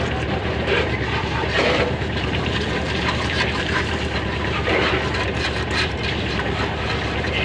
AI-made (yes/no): yes